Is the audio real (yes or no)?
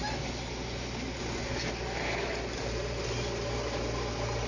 yes